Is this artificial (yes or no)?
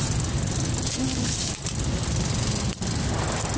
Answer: no